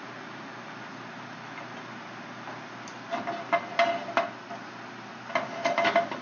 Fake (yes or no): no